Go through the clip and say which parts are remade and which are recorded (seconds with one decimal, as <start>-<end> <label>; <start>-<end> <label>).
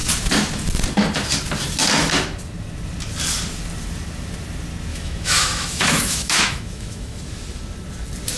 0.0-4.9 recorded; 4.9-7.2 remade; 7.2-8.4 recorded